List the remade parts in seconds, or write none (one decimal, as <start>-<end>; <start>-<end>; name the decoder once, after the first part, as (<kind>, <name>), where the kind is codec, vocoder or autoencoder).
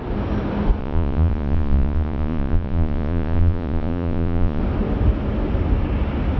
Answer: 0.8-4.6 (vocoder, Vocos)